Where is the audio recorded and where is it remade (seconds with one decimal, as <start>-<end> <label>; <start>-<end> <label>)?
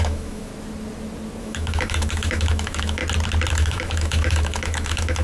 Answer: 0.0-0.5 remade; 0.5-1.4 recorded; 1.4-3.0 remade; 3.0-3.5 recorded; 3.5-5.2 remade